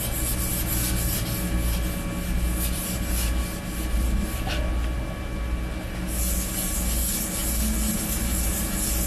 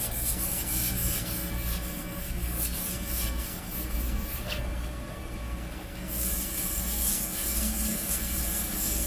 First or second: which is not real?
second